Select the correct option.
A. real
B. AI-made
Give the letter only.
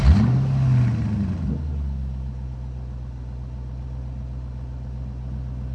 A